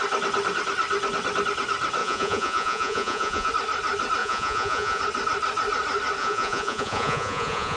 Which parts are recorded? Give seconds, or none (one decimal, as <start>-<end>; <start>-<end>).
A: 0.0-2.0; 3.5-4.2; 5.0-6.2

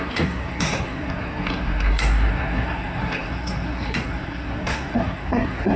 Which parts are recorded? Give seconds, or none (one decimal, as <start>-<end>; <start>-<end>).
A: none

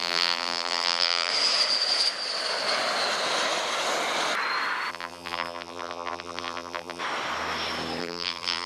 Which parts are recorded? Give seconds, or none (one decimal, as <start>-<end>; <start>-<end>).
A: 1.3-4.9; 7.0-8.0